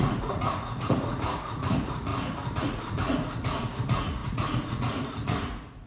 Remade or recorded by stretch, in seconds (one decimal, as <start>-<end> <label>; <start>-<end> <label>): 0.0-2.1 remade; 2.1-2.6 recorded; 2.6-5.9 remade